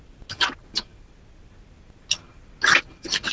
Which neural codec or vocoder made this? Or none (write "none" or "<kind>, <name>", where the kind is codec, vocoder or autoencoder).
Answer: none